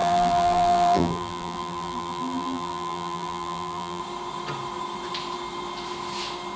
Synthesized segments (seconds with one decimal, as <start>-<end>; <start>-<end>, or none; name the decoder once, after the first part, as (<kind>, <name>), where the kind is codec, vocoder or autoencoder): 0.0-4.0 (vocoder, BigVGAN v2)